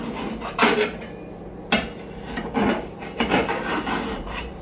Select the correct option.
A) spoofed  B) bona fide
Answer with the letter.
B